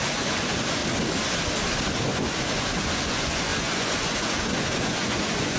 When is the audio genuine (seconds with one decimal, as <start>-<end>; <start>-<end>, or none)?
0.8-2.1